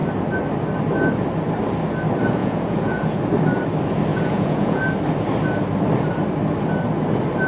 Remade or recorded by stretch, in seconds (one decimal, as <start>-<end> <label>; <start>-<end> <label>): 0.0-2.4 recorded; 2.4-3.2 remade; 3.2-4.1 recorded; 4.1-4.8 remade; 4.8-7.5 recorded